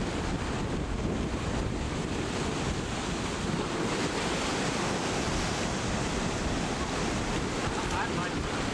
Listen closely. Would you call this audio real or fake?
real